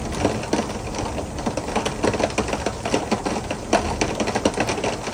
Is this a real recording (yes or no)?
yes